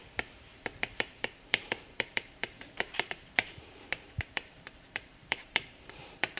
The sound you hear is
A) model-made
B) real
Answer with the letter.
A